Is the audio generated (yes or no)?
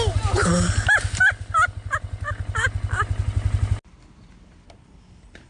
no